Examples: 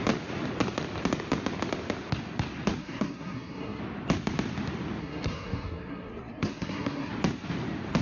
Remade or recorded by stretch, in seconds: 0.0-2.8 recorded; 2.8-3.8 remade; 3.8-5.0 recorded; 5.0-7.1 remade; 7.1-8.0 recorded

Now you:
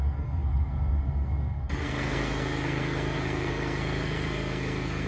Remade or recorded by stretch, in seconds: 0.0-5.1 remade

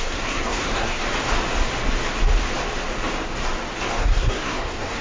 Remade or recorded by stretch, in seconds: 0.0-1.0 remade; 1.0-4.0 recorded; 4.0-5.0 remade

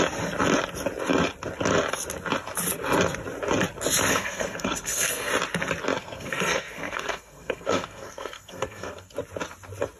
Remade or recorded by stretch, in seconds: 0.0-4.1 recorded; 4.1-5.3 remade; 5.3-6.0 recorded; 6.0-9.1 remade; 9.1-10.0 recorded

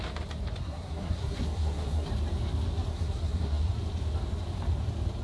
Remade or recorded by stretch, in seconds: 0.0-0.6 recorded; 0.6-2.1 remade; 2.1-2.9 recorded; 2.9-3.7 remade; 3.7-5.2 recorded